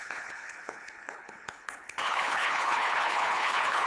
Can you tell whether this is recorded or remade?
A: remade